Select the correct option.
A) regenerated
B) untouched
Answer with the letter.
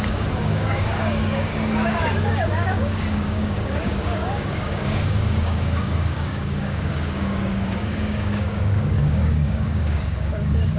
A